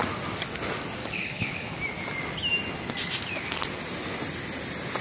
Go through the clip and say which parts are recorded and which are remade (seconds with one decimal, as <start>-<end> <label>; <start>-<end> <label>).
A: 0.0-1.0 recorded; 1.0-1.8 remade; 1.8-5.0 recorded